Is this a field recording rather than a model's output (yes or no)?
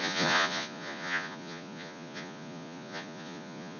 no